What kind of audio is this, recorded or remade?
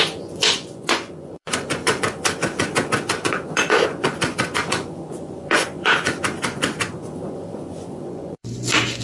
remade